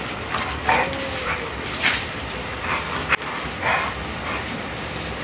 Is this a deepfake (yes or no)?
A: yes